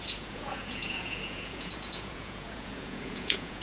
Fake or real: fake